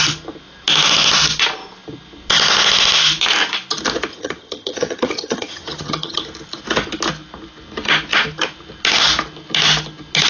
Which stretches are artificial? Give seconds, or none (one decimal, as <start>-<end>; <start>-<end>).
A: 4.1-6.2